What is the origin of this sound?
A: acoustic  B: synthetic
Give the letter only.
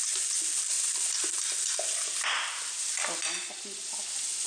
A